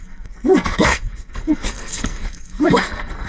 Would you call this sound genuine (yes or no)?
no